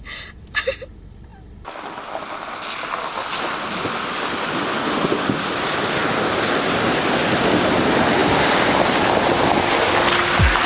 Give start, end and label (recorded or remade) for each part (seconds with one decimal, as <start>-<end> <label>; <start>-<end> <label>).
0.0-10.7 recorded